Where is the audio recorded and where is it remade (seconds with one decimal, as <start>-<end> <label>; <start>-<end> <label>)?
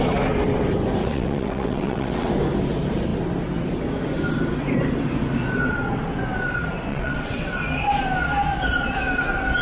0.0-1.0 recorded; 1.0-2.3 remade; 2.3-6.9 recorded; 6.9-7.6 remade; 7.6-9.6 recorded